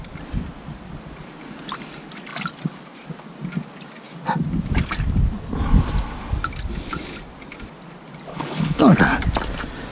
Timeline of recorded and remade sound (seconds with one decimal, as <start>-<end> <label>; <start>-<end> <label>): 0.0-8.3 recorded; 8.3-9.0 remade; 9.0-9.9 recorded